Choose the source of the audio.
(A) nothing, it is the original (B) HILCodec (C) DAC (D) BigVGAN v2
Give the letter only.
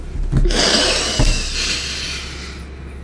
A